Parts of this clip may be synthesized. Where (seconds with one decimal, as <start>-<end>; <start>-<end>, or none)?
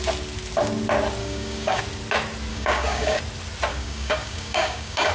1.2-1.8; 2.5-3.2; 3.7-5.1